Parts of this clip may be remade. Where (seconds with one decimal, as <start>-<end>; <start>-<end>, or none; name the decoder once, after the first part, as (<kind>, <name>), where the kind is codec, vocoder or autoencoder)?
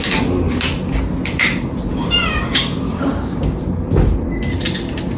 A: 1.9-3.6 (codec, DAC)